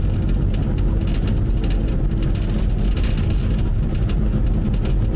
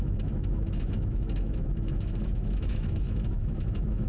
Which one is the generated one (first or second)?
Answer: second